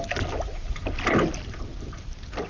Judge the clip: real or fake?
real